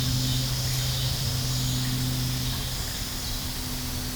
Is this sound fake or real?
real